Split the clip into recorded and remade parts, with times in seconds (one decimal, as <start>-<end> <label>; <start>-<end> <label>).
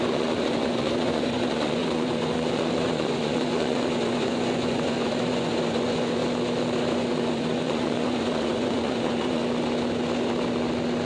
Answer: 0.0-6.2 remade; 6.2-6.9 recorded; 6.9-9.4 remade; 9.4-11.1 recorded